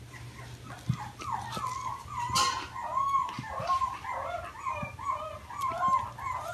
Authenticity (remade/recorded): recorded